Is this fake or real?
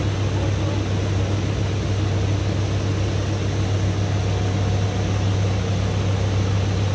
real